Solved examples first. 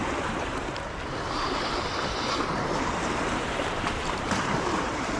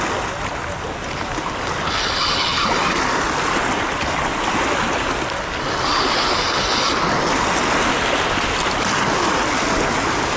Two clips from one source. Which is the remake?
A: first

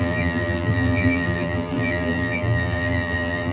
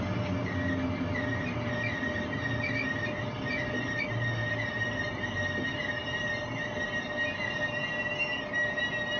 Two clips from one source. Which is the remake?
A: first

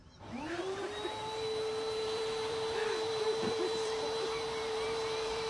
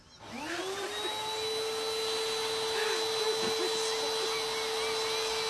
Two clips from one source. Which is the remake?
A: first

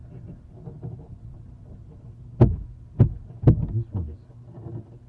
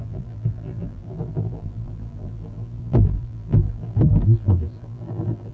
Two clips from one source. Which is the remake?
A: second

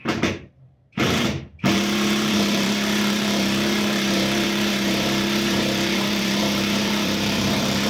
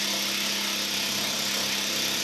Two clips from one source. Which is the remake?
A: first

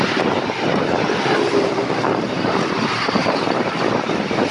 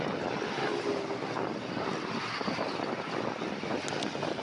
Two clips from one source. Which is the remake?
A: first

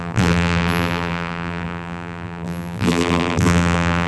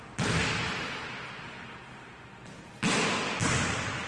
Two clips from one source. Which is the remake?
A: first